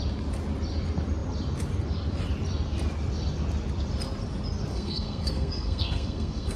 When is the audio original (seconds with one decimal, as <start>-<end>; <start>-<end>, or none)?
0.0-4.7